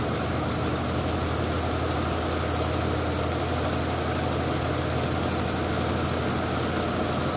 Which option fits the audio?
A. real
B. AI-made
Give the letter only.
A